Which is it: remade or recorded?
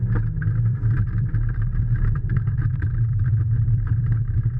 remade